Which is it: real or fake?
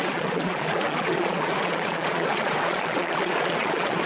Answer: fake